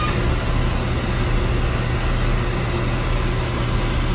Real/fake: real